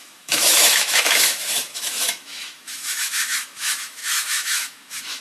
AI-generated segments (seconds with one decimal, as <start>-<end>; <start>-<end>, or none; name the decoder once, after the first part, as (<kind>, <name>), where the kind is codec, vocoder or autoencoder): 0.0-5.2 (autoencoder, DAC-VAE)